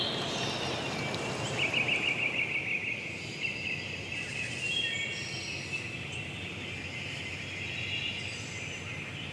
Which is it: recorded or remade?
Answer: recorded